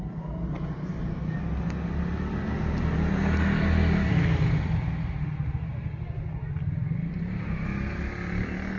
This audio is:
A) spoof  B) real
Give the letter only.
B